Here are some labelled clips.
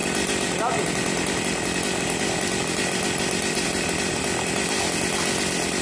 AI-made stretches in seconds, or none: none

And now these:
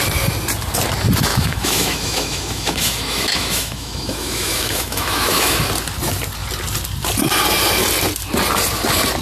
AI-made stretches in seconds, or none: 1.3-5.6 (autoencoder, DAC-VAE)

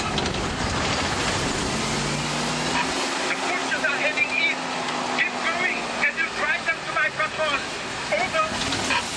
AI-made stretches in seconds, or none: none